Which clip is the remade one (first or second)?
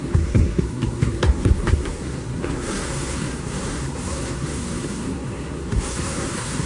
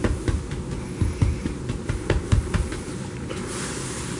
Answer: first